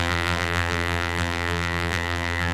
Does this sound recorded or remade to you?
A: remade